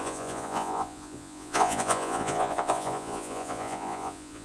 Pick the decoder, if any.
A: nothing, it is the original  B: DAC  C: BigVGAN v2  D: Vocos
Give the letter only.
D